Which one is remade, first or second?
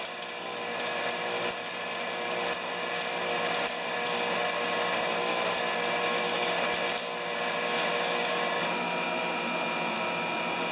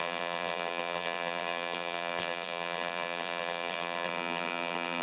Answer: second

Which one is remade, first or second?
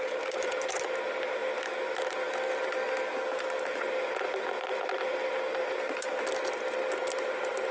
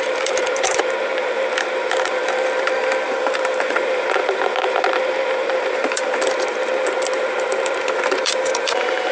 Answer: second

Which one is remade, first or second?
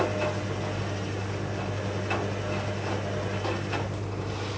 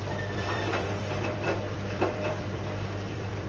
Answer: second